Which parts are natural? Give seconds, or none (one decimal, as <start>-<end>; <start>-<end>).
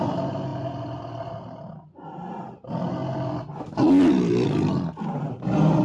0.0-5.8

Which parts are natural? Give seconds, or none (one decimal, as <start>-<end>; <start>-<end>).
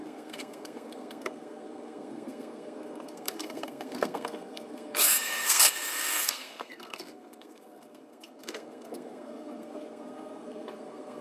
none